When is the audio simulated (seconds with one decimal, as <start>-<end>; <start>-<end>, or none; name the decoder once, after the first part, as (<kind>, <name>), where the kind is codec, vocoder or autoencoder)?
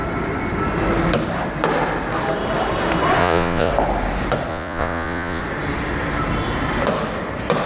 3.2-3.7 (vocoder, Vocos); 4.5-5.4